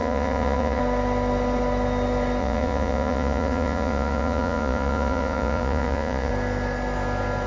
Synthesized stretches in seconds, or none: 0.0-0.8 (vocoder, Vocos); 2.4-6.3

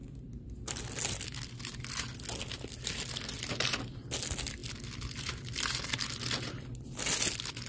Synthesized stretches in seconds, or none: none

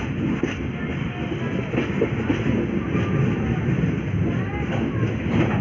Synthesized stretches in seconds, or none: none

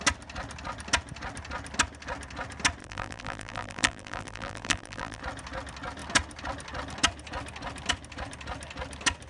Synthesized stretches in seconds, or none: 2.8-5.2 (vocoder, BigVGAN v2)

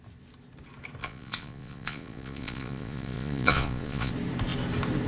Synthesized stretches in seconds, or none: 1.0-4.1 (vocoder, Vocos)